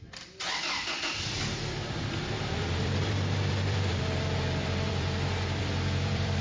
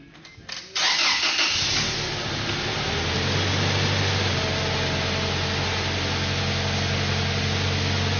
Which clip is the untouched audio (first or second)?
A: second